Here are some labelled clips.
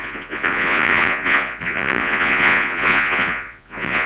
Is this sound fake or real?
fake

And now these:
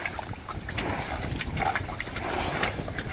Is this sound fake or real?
fake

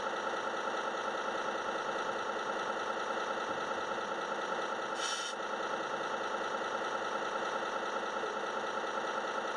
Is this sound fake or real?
real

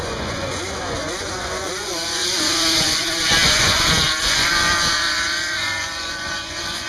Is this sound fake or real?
fake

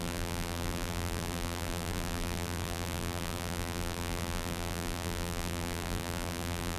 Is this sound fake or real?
fake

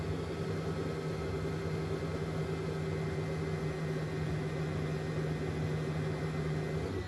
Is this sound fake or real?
real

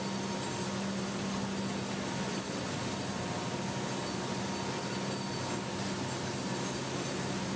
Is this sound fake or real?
real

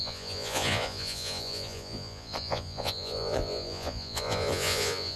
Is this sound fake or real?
fake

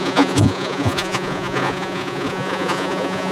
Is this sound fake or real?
fake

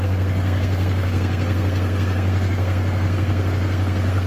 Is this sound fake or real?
fake